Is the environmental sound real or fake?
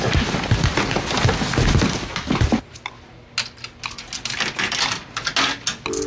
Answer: real